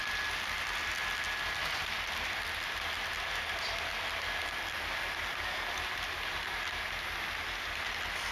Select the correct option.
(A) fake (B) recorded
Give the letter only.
B